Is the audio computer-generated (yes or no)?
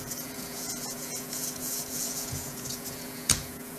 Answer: yes